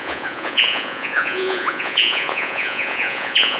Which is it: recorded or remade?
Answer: remade